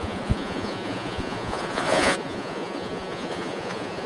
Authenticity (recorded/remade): remade